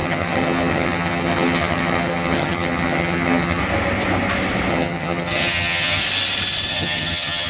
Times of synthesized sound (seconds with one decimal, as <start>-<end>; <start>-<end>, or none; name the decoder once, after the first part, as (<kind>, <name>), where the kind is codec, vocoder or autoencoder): 0.0-3.6 (vocoder, HiFi-GAN); 4.7-6.0; 6.7-7.5